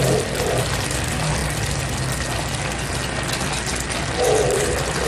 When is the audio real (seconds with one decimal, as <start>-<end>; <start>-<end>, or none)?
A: 0.0-5.1